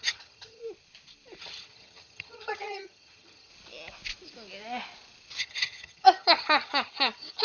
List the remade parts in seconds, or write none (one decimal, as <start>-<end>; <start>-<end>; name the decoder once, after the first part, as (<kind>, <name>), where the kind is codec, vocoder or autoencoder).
0.0-0.6 (vocoder, HiFi-GAN); 1.4-3.5; 5.4-7.4